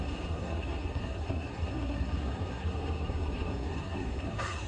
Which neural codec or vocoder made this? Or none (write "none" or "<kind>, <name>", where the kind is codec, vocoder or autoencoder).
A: codec, SNAC